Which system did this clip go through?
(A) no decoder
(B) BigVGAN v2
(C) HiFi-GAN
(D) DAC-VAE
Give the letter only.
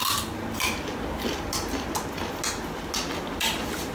A